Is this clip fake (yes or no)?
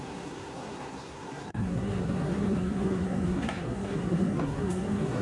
yes